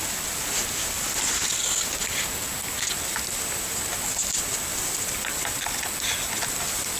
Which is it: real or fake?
real